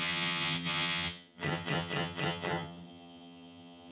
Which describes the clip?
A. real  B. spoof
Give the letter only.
B